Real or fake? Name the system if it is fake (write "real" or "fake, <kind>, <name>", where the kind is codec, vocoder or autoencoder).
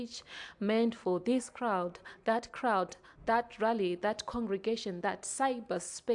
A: real